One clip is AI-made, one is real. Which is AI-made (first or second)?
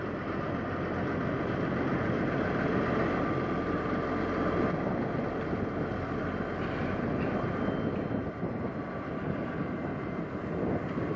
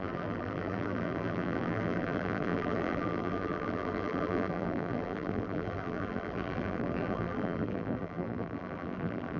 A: second